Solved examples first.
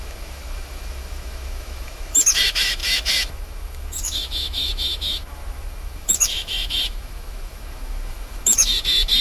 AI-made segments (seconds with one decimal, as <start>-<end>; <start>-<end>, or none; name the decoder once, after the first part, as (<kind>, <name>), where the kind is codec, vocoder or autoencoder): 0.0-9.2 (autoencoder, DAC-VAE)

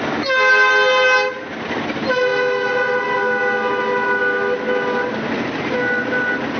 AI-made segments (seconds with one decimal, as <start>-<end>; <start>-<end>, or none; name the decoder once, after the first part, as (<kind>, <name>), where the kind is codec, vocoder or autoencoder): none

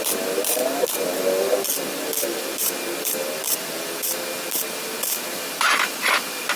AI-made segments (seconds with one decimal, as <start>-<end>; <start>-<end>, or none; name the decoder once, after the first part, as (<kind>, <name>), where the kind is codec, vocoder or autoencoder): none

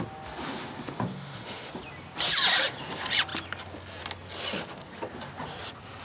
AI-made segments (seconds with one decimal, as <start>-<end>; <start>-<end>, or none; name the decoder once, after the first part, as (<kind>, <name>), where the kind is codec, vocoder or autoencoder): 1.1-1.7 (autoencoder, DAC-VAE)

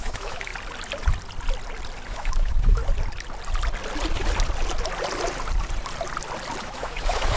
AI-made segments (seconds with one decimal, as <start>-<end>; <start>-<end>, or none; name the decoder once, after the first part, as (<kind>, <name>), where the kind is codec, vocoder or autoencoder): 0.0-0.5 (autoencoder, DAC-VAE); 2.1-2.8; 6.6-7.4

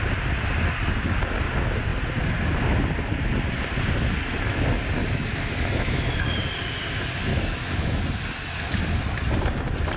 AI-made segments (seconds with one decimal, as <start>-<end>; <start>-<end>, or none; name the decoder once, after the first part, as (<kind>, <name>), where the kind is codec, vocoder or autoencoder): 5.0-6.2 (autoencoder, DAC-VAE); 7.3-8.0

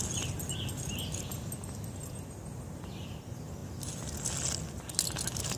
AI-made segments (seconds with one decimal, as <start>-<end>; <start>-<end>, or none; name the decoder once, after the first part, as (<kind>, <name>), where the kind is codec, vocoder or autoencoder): none